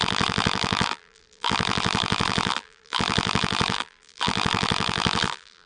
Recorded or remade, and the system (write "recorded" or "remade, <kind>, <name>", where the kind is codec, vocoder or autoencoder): remade, vocoder, BigVGAN v2